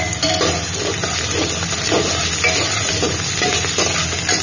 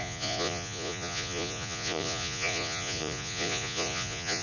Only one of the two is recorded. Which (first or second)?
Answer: first